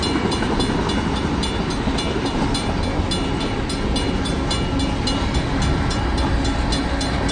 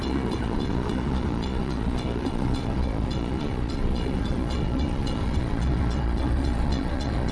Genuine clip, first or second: first